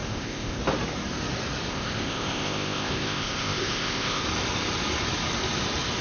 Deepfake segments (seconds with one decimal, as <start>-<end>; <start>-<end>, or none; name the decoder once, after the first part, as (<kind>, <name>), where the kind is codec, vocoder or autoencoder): 0.0-0.6 (codec, ZipCodec); 1.7-4.2